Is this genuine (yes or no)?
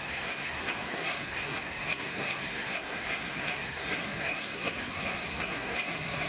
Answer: no